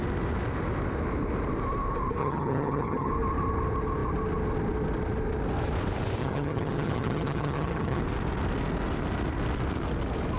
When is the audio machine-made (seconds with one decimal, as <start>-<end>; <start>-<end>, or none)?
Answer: 2.2-3.1; 6.2-8.0